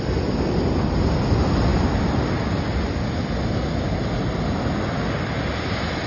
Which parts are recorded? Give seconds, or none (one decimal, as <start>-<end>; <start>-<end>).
0.0-6.1